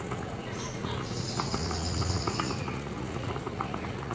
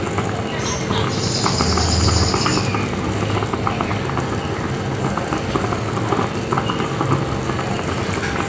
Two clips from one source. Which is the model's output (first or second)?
first